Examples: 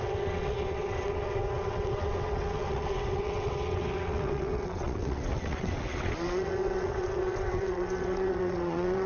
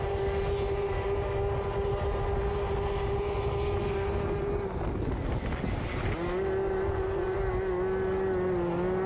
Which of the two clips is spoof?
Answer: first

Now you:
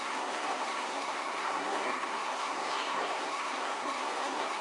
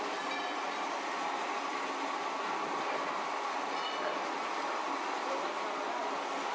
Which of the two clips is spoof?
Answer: first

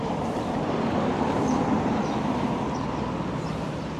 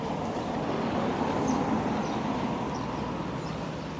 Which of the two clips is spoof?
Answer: first